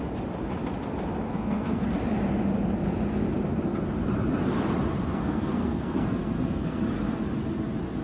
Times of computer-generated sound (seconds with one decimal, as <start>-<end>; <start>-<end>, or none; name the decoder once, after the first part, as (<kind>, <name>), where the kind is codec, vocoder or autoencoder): 1.3-1.8 (codec, SNAC); 5.1-6.8